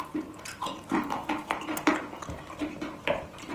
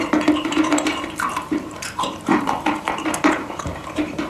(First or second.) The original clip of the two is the first